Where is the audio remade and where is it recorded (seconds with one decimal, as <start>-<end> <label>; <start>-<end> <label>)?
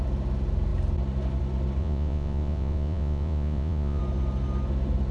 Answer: 0.0-1.8 recorded; 1.8-4.0 remade; 4.0-5.1 recorded